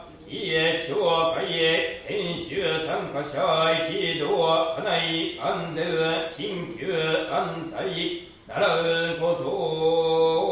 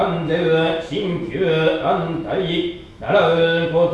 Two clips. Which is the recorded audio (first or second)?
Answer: first